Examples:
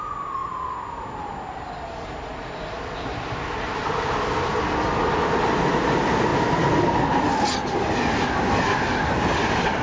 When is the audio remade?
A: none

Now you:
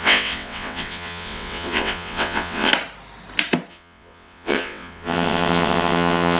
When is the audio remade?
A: 0.0-2.7 (vocoder, WaveNeXt); 3.7-6.4

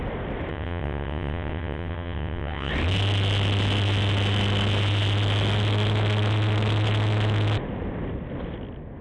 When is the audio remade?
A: 0.5-2.7 (vocoder, WaveNeXt)

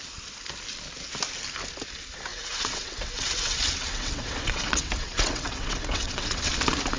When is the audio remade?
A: 2.3-6.5 (vocoder, WaveNeXt)